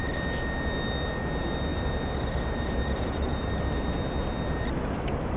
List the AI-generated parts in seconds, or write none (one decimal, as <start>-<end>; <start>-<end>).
1.7-3.9